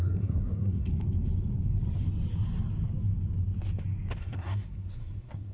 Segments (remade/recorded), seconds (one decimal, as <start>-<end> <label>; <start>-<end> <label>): 0.0-0.9 remade; 0.9-4.2 recorded; 4.2-5.5 remade